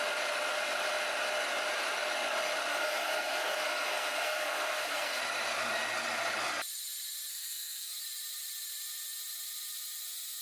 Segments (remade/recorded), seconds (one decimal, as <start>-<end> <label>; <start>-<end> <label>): 0.0-2.7 recorded; 2.7-5.2 remade; 5.2-7.3 recorded; 7.3-7.9 remade; 7.9-10.4 recorded

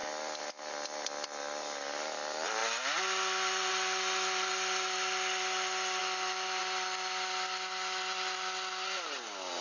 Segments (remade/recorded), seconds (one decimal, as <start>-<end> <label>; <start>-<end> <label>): 0.0-9.6 recorded

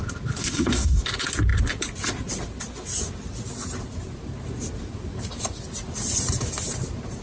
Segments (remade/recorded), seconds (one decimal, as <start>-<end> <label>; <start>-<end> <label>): 0.0-0.4 recorded; 0.4-1.0 remade; 1.0-7.2 recorded

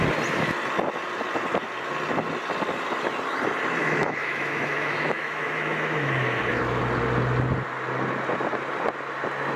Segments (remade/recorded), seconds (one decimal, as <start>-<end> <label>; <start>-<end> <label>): 0.0-3.8 recorded; 3.8-6.8 remade; 6.8-9.6 recorded

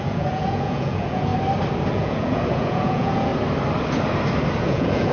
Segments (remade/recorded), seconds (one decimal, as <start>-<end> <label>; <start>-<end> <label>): 0.0-1.3 remade; 1.3-1.9 recorded; 1.9-3.3 remade; 3.3-4.6 recorded; 4.6-5.1 remade

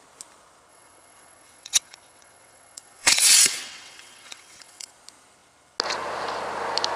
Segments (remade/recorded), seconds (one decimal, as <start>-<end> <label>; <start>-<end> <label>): 0.0-0.7 recorded; 0.7-4.9 remade; 4.9-7.0 recorded

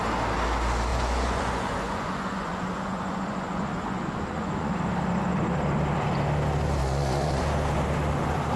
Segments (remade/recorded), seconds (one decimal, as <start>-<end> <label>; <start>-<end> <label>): 0.0-0.9 recorded; 0.9-4.7 remade; 4.7-6.8 recorded; 6.8-7.4 remade; 7.4-8.6 recorded